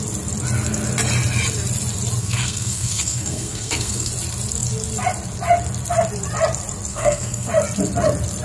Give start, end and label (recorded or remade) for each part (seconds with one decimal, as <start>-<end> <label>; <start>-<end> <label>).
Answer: 0.0-2.2 recorded; 2.2-4.1 remade; 4.1-6.9 recorded; 6.9-7.5 remade; 7.5-8.4 recorded